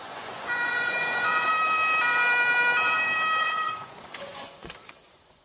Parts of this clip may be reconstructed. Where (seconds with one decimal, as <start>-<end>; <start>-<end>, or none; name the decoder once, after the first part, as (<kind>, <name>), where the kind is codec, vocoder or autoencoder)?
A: 0.0-1.5 (vocoder, Vocos); 3.4-5.4